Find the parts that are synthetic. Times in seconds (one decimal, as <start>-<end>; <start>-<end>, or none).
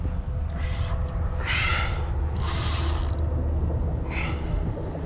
none